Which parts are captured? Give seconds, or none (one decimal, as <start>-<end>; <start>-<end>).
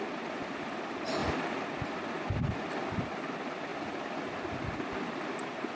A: 0.0-5.8